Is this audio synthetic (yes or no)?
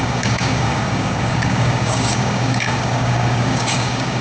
yes